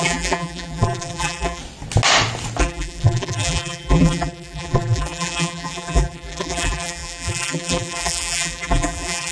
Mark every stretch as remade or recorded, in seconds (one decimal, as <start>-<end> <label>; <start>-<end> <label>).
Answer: 0.0-1.6 remade; 1.6-2.6 recorded; 2.6-9.3 remade